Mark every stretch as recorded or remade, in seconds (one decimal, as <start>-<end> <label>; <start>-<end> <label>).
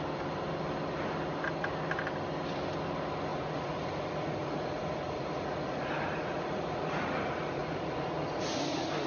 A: 0.0-3.3 recorded; 3.3-8.4 remade; 8.4-9.1 recorded